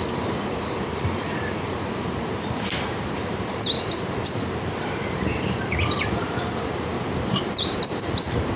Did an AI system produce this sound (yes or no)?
yes